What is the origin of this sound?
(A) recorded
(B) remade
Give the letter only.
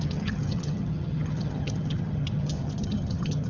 B